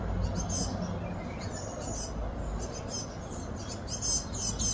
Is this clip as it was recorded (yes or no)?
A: yes